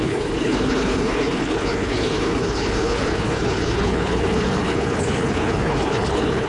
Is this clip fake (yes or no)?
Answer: yes